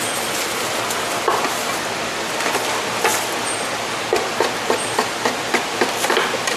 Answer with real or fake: real